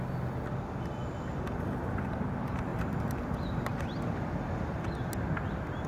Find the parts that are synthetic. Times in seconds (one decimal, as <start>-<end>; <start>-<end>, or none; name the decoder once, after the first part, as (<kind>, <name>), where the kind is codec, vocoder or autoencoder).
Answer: 2.7-3.8 (vocoder, BigVGAN v2)